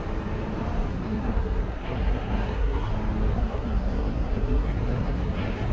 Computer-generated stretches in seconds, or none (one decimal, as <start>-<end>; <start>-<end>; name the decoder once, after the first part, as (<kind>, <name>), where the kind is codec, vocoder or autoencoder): 0.9-2.9 (codec, SNAC); 3.3-5.7